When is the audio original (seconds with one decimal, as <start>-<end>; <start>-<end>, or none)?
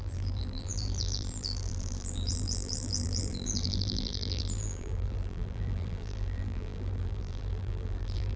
none